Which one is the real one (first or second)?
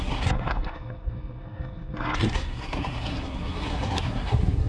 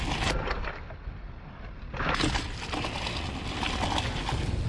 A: second